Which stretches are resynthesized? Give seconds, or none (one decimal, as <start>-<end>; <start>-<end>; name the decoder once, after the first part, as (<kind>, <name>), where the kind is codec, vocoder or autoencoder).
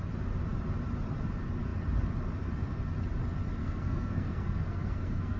3.6-5.4 (codec, SNAC)